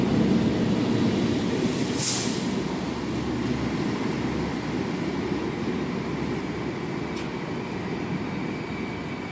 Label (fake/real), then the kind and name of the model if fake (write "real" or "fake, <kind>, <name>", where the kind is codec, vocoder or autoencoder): real